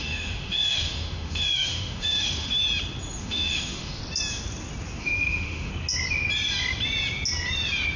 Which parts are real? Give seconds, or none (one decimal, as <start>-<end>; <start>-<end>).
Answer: 2.6-3.2; 4.0-5.0; 5.7-8.0